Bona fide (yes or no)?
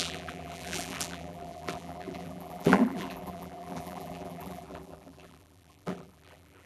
no